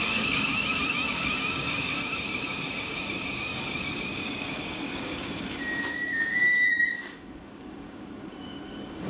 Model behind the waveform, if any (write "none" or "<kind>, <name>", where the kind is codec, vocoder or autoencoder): codec, DAC